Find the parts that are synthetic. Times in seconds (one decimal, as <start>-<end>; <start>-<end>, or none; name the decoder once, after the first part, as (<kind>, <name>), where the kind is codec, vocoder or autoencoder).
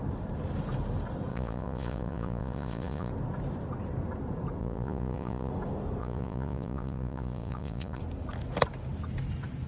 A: 1.3-3.1 (vocoder, Vocos); 4.6-5.5; 6.0-8.0